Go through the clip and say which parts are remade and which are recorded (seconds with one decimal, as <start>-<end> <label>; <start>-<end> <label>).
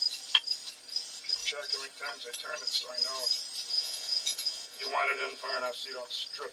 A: 0.0-3.7 recorded; 3.7-5.6 remade; 5.6-6.5 recorded